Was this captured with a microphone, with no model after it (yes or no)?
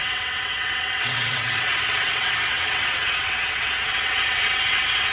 no